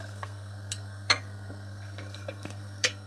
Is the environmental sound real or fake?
fake